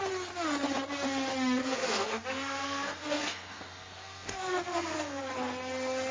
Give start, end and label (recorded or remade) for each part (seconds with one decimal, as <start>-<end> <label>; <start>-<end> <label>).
0.0-1.6 recorded; 1.6-5.2 remade; 5.2-6.1 recorded